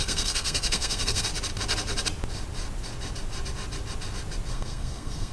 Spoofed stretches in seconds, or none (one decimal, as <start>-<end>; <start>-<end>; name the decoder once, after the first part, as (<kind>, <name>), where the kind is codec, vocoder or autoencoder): 0.0-1.3 (codec, SNAC); 4.5-5.3